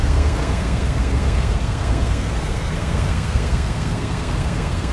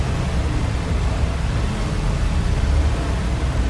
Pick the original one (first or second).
second